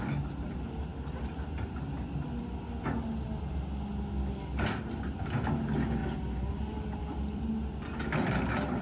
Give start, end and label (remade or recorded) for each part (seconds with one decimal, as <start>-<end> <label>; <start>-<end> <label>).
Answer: 0.0-8.8 recorded